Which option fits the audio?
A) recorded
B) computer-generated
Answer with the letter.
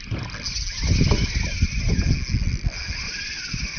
A